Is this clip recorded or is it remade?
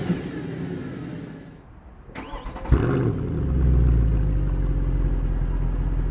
recorded